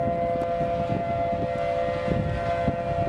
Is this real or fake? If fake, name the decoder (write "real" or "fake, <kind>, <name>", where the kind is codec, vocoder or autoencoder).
real